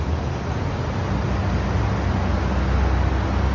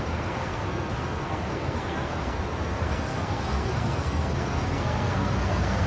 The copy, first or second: second